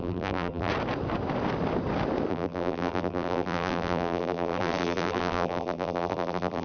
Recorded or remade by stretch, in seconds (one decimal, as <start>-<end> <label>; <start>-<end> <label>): 0.0-0.7 remade; 0.7-2.3 recorded; 2.3-6.6 remade